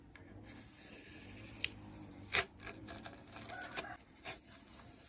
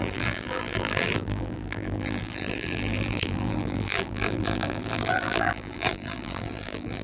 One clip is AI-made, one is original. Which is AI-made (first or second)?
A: second